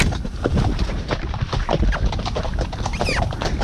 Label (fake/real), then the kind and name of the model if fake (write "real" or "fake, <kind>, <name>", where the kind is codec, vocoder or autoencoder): real